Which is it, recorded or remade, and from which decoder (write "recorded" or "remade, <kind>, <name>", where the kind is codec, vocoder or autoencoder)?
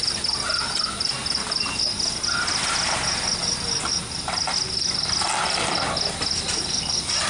recorded